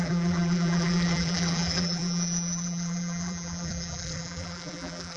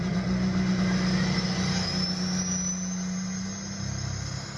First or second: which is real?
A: second